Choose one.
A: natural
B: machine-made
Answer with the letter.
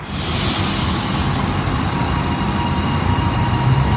A